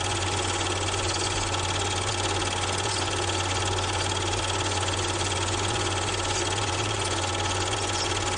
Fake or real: fake